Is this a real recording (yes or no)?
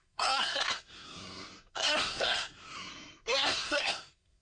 no